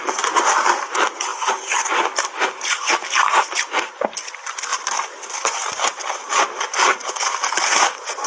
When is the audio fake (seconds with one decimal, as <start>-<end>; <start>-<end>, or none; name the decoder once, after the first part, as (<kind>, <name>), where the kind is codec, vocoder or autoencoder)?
4.7-6.5 (vocoder, BigVGAN v2)